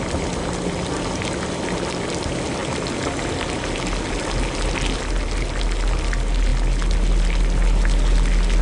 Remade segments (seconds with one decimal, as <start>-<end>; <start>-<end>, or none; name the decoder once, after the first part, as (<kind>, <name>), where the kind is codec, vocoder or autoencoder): none